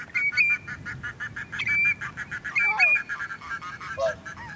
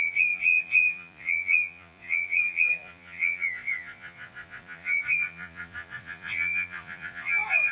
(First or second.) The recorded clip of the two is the first